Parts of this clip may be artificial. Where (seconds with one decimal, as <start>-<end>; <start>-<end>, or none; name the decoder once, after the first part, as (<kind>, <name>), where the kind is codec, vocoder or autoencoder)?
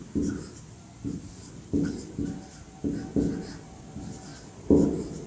1.4-1.9 (codec, HILCodec)